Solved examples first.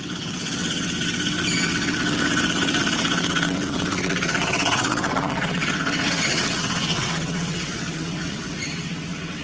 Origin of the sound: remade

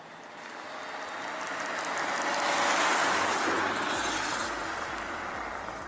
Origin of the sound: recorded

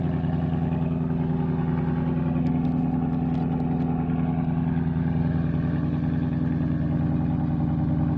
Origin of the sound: recorded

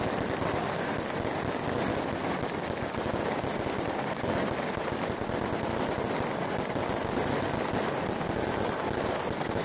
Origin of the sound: recorded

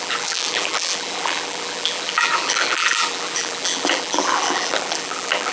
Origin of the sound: remade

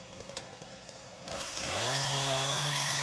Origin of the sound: remade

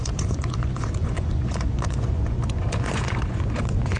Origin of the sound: remade